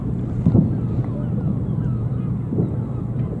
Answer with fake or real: fake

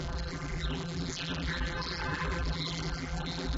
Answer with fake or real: fake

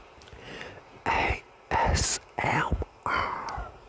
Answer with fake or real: real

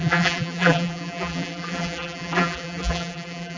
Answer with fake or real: fake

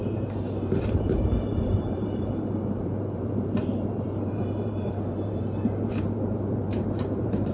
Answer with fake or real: fake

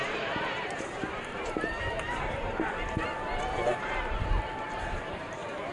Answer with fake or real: fake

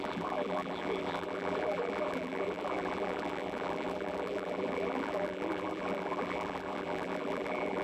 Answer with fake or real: fake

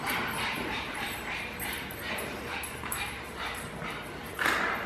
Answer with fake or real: fake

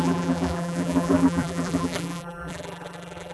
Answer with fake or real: fake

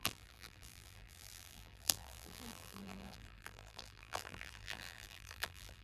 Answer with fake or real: fake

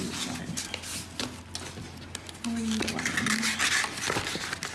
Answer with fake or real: real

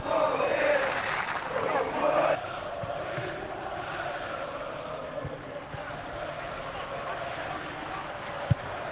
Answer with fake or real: real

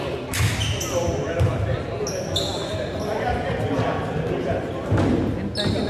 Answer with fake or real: real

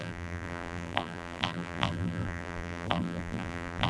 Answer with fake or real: fake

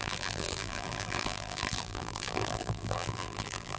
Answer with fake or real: fake